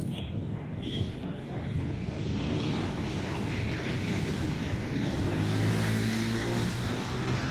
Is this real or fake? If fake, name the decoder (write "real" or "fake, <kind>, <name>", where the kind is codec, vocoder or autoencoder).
fake, codec, DAC